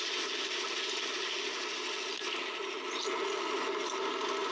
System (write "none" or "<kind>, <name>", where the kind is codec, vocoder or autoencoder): none